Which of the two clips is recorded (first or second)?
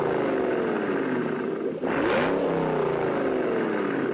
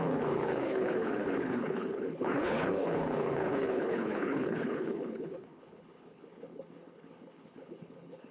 first